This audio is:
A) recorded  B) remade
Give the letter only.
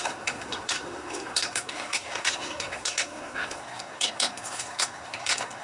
B